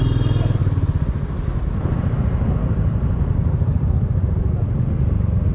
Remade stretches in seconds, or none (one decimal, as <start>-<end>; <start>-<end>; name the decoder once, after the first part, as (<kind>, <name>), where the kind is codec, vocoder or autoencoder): 0.6-3.9 (vocoder, BigVGAN v2)